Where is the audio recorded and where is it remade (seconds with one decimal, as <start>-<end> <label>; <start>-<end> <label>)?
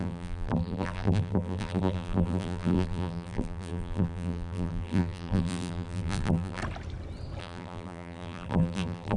0.0-6.6 remade; 6.6-7.4 recorded; 7.4-9.2 remade